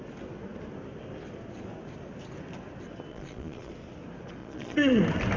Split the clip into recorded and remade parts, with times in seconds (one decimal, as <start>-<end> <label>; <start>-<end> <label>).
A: 0.0-3.1 recorded; 3.1-3.7 remade; 3.7-4.4 recorded; 4.4-5.0 remade; 5.0-5.4 recorded

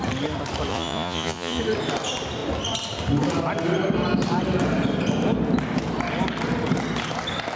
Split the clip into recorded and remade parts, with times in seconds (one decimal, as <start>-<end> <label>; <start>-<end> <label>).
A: 0.0-0.7 recorded; 0.7-1.6 remade; 1.6-7.6 recorded

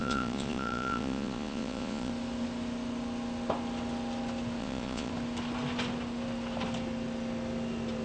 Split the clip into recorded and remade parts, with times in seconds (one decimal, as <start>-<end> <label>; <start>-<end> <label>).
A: 0.0-2.1 remade; 2.1-4.6 recorded; 4.6-5.1 remade; 5.1-8.0 recorded

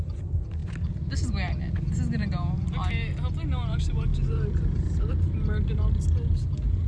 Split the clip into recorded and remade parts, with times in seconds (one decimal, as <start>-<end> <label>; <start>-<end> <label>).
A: 0.0-6.9 recorded

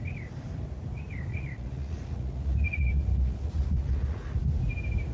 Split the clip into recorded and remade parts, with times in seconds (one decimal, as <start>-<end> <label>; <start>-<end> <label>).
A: 0.0-1.3 recorded; 1.3-4.4 remade; 4.4-5.1 recorded